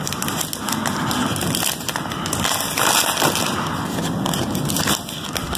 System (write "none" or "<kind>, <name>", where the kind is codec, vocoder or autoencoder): none